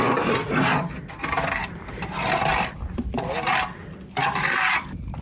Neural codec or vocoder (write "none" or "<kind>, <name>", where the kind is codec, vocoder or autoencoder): vocoder, BigVGAN v2